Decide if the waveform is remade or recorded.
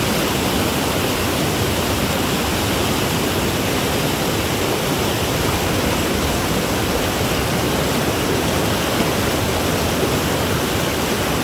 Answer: recorded